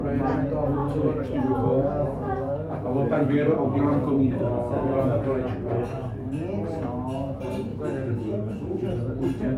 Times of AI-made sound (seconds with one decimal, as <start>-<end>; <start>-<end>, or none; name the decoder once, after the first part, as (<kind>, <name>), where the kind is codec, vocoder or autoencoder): 0.8-4.5 (codec, DAC); 7.7-8.9